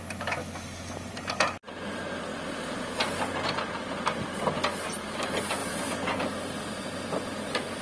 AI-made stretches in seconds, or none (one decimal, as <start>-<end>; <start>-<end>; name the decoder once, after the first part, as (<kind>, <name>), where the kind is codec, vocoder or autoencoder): none